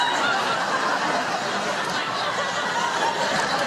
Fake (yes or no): no